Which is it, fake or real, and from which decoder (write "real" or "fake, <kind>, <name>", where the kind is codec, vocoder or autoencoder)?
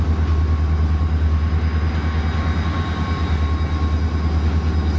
real